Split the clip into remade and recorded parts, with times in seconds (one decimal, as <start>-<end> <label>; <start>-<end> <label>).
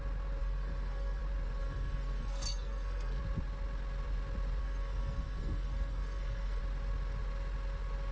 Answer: 0.0-0.4 recorded; 0.4-1.2 remade; 1.2-1.6 recorded; 1.6-3.2 remade; 3.2-4.6 recorded; 4.6-6.6 remade; 6.6-8.1 recorded